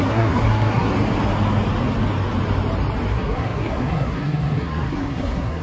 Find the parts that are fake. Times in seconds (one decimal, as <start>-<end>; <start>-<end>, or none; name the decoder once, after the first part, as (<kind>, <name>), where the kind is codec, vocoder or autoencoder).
0.0-0.9 (codec, SNAC); 3.1-5.6